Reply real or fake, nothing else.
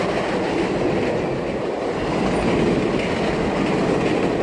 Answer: real